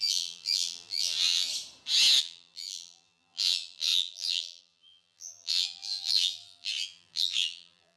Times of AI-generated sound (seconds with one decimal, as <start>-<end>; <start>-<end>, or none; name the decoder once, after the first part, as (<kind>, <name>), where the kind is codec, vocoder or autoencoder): 0.0-1.5 (vocoder, BigVGAN v2); 2.2-8.0